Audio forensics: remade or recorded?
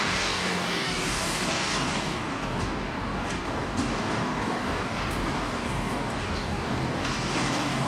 remade